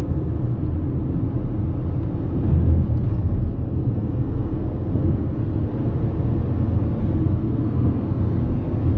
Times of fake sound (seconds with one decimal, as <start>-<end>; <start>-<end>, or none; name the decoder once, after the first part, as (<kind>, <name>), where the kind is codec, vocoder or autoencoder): 0.0-0.6 (codec, SNAC); 2.4-5.7; 7.0-9.0